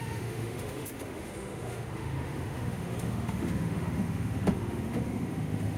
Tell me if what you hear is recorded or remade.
remade